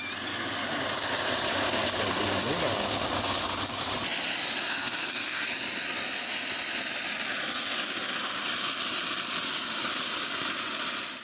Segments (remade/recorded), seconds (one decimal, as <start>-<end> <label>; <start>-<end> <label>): 0.0-4.7 recorded; 4.7-5.4 remade; 5.4-11.2 recorded